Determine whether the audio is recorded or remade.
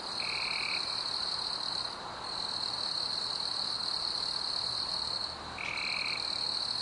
recorded